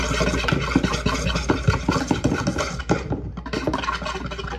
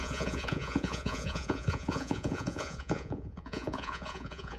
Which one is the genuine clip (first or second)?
first